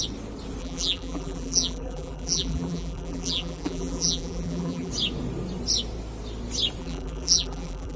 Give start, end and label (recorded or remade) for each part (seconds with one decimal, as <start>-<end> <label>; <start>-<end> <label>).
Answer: 0.0-0.6 recorded; 0.6-4.9 remade; 4.9-6.8 recorded; 6.8-8.0 remade